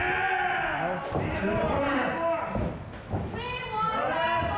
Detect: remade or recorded recorded